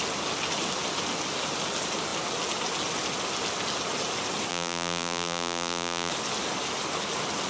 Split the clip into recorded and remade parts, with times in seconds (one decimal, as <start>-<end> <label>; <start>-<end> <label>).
0.0-4.5 recorded; 4.5-6.1 remade; 6.1-7.5 recorded